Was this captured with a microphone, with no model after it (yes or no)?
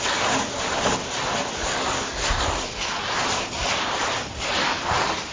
yes